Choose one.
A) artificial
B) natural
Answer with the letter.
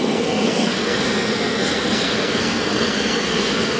A